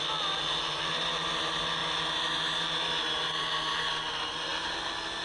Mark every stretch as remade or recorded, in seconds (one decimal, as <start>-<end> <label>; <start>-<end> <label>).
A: 0.0-5.2 recorded